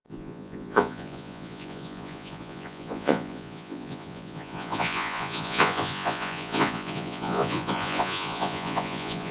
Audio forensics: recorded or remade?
remade